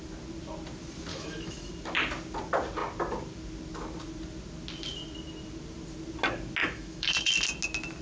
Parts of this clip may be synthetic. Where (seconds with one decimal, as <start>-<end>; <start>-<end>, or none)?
1.1-1.7; 6.6-7.3